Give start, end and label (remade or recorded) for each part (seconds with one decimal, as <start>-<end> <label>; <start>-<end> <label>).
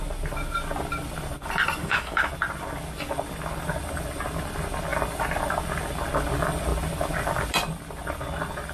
0.0-1.8 recorded; 1.8-2.3 remade; 2.3-8.7 recorded